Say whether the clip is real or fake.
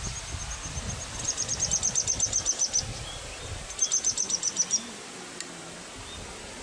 real